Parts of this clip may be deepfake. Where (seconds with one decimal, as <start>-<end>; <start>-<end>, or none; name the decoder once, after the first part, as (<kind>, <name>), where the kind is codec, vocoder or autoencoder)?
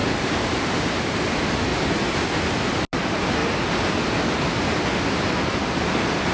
none